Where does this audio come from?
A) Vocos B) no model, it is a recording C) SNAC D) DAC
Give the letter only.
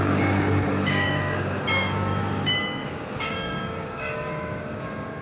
D